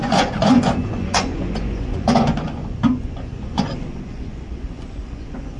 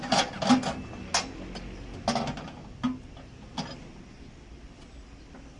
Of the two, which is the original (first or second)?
second